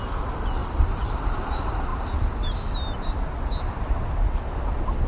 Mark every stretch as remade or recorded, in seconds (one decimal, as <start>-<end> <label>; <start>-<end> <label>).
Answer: 0.0-0.6 recorded; 0.6-1.2 remade; 1.2-5.1 recorded